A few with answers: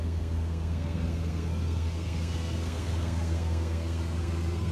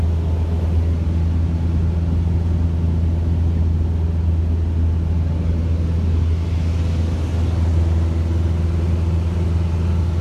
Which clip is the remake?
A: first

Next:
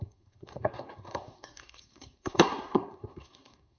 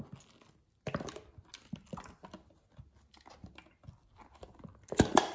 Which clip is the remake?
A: first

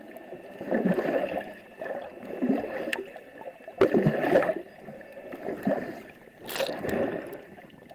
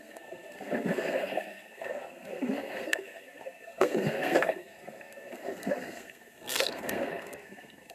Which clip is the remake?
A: second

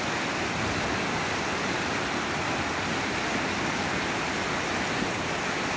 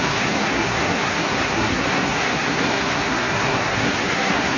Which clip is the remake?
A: second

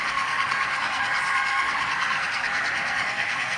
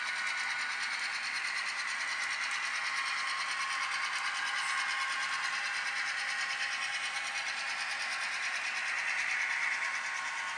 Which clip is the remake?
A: first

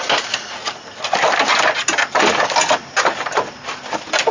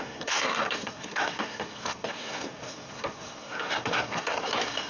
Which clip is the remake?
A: second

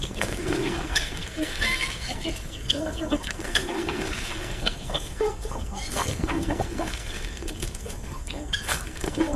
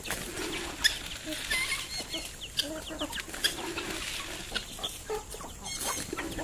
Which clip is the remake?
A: first